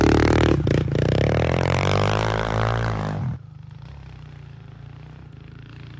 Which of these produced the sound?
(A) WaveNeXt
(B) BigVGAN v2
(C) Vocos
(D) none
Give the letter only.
B